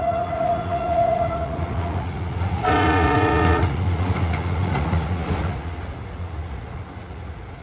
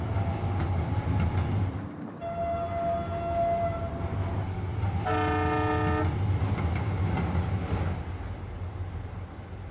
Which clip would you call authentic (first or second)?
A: second